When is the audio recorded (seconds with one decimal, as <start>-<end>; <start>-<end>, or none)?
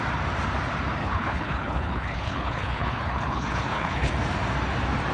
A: 0.0-1.0; 4.1-5.1